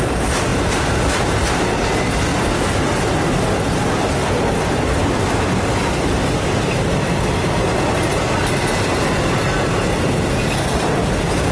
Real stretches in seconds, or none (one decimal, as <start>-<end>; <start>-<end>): 0.0-11.5